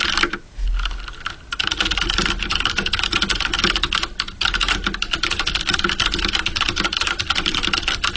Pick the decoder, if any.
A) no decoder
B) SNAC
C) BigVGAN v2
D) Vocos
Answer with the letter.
A